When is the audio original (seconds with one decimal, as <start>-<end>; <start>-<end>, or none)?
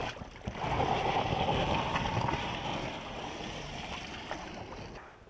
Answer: 0.0-5.3